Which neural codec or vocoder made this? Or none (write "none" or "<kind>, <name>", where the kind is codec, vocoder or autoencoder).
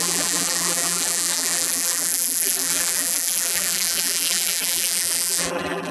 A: vocoder, BigVGAN v2